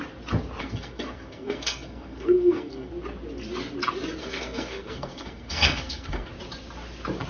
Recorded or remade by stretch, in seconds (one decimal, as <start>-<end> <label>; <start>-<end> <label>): 0.0-0.6 recorded; 0.6-2.9 remade; 2.9-4.2 recorded; 4.2-6.3 remade; 6.3-7.3 recorded